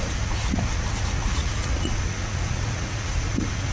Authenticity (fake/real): fake